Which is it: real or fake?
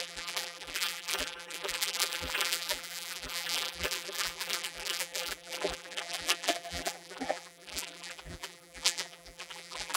fake